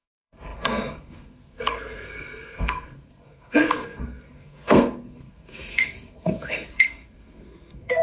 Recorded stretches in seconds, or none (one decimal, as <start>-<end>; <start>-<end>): none